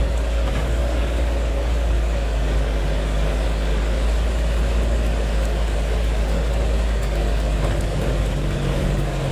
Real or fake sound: fake